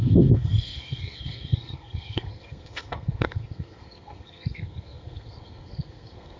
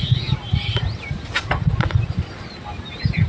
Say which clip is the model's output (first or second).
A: first